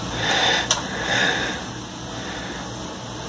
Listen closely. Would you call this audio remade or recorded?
recorded